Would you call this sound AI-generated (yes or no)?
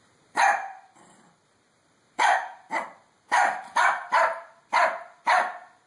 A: yes